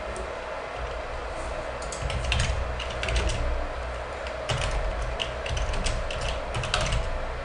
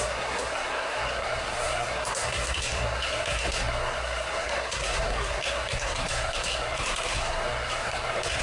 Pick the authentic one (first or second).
first